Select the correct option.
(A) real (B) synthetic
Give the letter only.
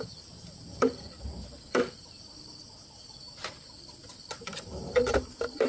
B